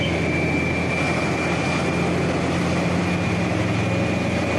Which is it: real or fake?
real